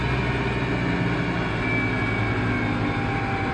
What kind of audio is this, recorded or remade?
recorded